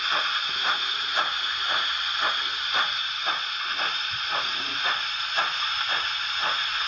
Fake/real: fake